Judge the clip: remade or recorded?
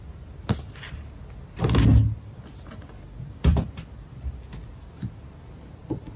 recorded